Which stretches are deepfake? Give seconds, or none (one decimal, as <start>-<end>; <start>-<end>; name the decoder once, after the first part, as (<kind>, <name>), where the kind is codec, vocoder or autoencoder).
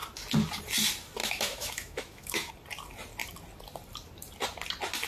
1.2-2.5 (autoencoder, DAC-VAE)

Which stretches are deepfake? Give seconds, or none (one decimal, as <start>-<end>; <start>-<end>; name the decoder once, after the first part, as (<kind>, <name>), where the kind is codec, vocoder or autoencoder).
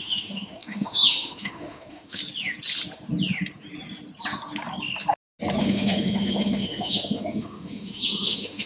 0.0-2.2 (autoencoder, DAC-VAE); 5.6-8.7